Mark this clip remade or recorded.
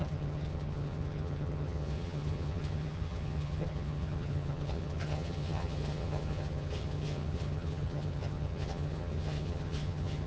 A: remade